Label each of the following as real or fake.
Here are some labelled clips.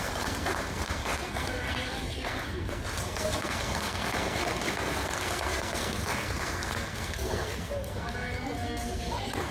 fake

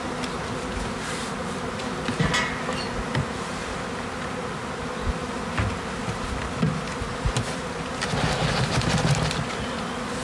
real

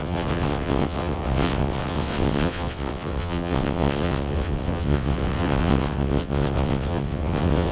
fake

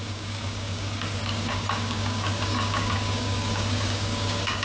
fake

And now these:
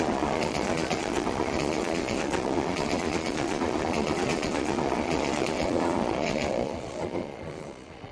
fake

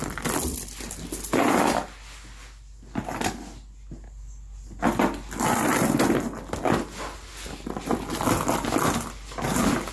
real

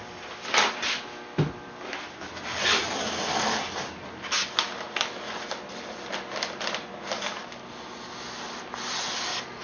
real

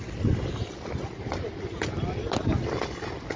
real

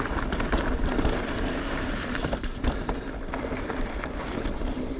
real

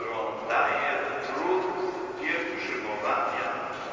real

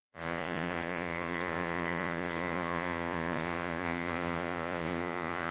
fake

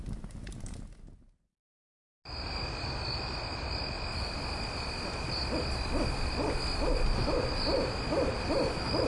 real